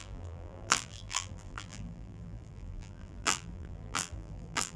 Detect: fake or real fake